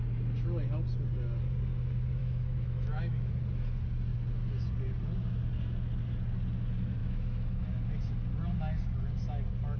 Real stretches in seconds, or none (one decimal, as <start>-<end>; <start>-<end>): 0.0-2.2; 3.3-7.0; 7.6-9.8